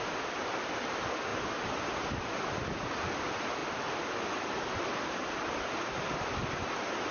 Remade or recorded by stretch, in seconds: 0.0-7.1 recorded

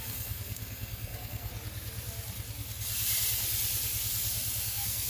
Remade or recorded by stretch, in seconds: 0.0-1.5 remade; 1.5-4.6 recorded; 4.6-5.1 remade

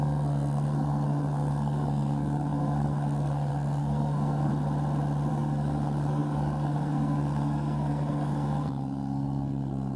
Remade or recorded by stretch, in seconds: 0.0-4.5 remade; 4.5-5.3 recorded; 5.3-10.0 remade

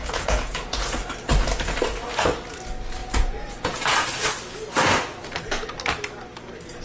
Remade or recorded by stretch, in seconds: 0.0-1.0 remade; 1.0-3.0 recorded; 3.0-4.1 remade; 4.1-6.8 recorded

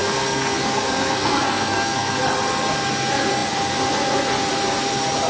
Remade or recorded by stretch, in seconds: 0.0-2.2 remade; 2.2-5.3 recorded

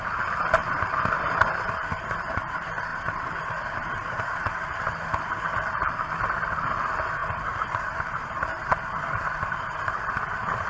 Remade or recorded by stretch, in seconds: 0.0-0.6 recorded; 0.6-1.3 remade; 1.3-2.9 recorded; 2.9-6.2 remade; 6.2-10.7 recorded